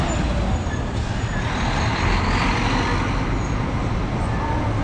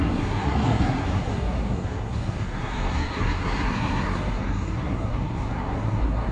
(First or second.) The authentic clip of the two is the first